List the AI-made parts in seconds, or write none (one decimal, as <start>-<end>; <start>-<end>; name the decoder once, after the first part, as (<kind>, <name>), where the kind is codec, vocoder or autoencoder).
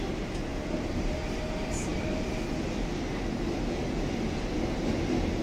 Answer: 0.0-1.9 (vocoder, BigVGAN v2)